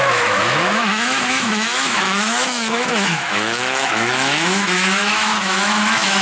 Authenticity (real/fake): fake